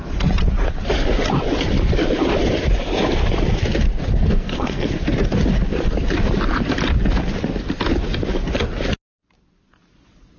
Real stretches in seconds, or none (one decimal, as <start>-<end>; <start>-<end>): 0.0-4.2; 4.9-10.4